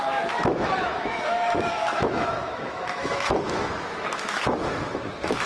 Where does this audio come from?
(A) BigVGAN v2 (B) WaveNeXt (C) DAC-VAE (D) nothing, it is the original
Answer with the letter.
C